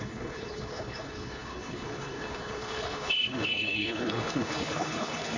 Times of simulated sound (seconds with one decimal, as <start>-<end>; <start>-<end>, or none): 0.0-5.4